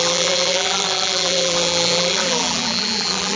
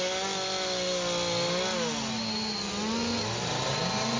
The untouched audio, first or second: second